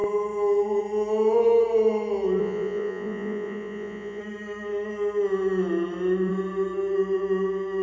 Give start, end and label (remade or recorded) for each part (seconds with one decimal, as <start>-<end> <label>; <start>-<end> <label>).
0.0-2.4 recorded; 2.4-4.2 remade; 4.2-7.8 recorded